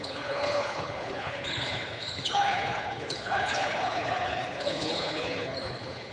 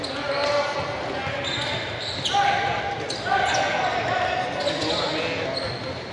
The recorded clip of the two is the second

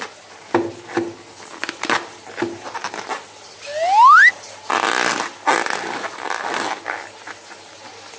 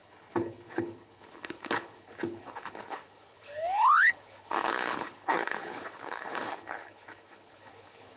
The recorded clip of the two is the first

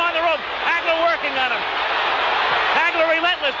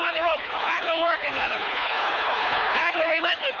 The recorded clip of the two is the first